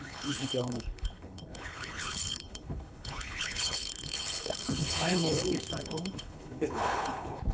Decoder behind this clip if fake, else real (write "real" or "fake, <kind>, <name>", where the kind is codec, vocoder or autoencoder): fake, codec, HILCodec